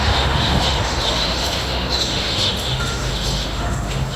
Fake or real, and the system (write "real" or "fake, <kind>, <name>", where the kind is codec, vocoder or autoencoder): fake, autoencoder, DAC-VAE